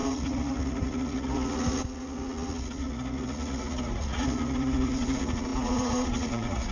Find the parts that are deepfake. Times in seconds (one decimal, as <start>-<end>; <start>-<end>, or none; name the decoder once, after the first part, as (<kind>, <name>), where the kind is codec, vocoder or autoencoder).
0.0-6.7 (vocoder, Vocos)